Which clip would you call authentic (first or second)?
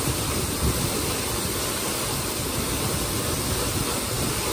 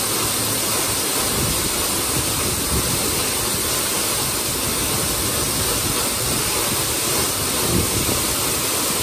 second